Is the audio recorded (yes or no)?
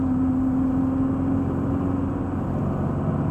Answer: yes